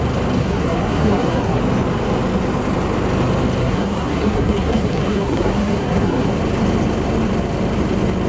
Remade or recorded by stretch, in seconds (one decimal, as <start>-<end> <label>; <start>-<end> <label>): 0.0-0.4 recorded; 0.4-1.6 remade; 1.6-3.6 recorded; 3.6-6.4 remade; 6.4-8.3 recorded